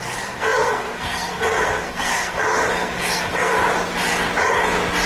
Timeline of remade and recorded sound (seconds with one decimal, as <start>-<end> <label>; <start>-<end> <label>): 0.0-3.6 remade; 3.6-5.1 recorded